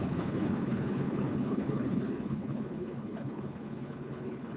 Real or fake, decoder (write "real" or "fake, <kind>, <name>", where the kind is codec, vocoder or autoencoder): fake, codec, HILCodec